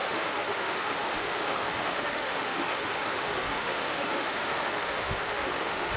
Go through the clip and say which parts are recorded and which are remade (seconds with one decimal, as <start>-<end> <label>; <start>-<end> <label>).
0.0-6.0 remade